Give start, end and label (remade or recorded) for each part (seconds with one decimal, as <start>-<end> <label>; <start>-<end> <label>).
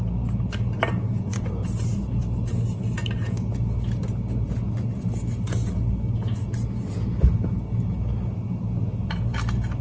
0.0-9.8 recorded